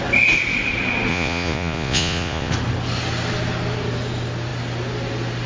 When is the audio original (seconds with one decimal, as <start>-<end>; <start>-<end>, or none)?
0.0-1.1; 2.5-5.5